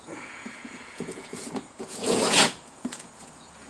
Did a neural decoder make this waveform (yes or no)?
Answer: yes